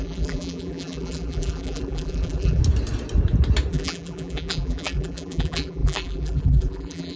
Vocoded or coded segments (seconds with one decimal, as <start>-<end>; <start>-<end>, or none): 0.0-2.6; 3.7-7.2